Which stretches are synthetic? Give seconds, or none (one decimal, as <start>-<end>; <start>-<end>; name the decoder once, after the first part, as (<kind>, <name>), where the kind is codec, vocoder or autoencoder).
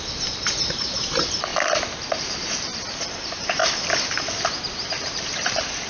0.0-1.5 (vocoder, BigVGAN v2); 2.1-2.7; 3.2-3.6; 5.1-5.9